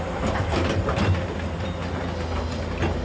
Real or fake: real